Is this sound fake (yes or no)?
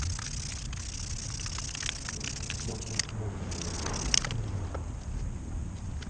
no